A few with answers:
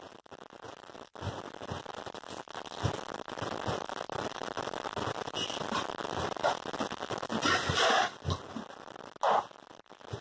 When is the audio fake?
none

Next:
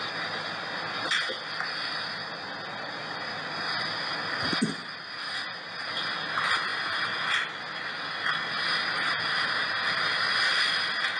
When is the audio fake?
none